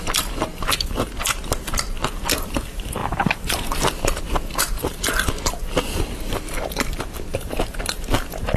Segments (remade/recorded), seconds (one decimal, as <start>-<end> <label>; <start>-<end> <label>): 0.0-0.5 recorded; 0.5-1.1 remade; 1.1-3.0 recorded; 3.0-5.1 remade; 5.1-7.3 recorded; 7.3-7.8 remade; 7.8-8.6 recorded